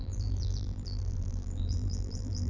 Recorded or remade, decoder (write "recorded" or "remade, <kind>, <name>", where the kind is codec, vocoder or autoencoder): remade, vocoder, BigVGAN v2